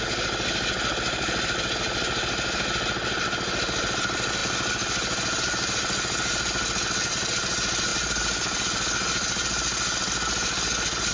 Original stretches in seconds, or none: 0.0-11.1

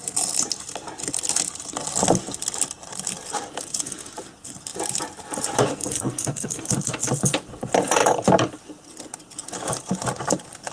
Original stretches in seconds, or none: 0.0-5.7; 6.6-10.7

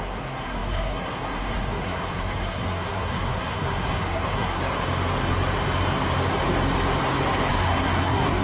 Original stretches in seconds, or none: 4.6-7.5

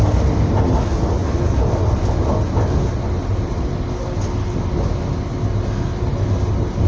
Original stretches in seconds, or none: 0.0-6.9